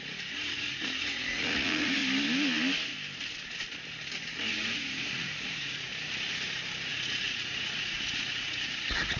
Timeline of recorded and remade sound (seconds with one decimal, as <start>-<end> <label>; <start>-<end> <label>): 0.0-2.0 remade; 2.0-4.5 recorded; 4.5-5.9 remade; 5.9-6.9 recorded; 6.9-9.2 remade